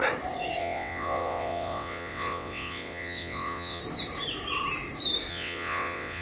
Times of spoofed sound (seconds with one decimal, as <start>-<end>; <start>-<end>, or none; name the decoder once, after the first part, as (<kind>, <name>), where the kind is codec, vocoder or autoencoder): 0.6-3.8 (vocoder, WaveNeXt); 5.3-6.2